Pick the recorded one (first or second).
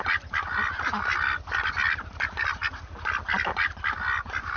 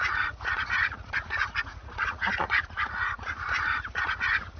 first